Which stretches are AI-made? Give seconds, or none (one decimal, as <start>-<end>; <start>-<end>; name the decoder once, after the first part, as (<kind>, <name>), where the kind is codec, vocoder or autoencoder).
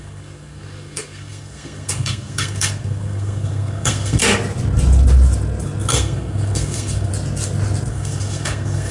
0.0-4.2 (codec, SNAC); 5.9-7.1; 7.9-8.9